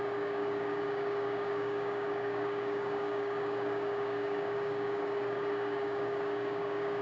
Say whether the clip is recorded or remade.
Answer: remade